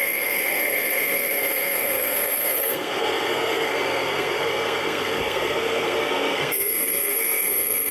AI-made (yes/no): yes